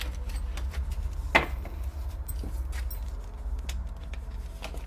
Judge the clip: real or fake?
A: real